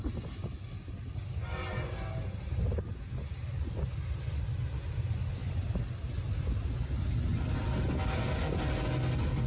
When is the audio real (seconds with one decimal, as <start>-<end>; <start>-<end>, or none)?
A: 0.0-9.5